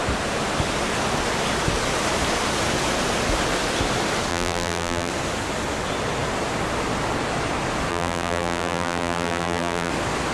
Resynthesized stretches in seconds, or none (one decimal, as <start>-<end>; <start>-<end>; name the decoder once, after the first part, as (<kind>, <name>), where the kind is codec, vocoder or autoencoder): 4.3-5.1 (vocoder, BigVGAN v2); 7.9-9.9